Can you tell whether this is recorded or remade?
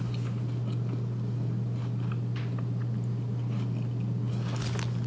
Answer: recorded